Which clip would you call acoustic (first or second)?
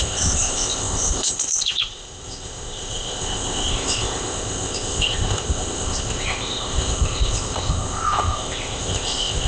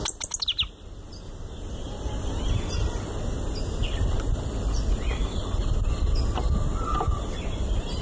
second